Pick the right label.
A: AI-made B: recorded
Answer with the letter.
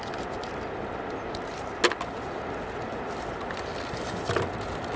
B